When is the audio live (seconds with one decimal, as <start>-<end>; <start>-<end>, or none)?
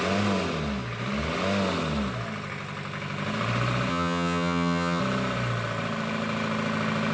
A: 0.0-3.9; 5.0-7.1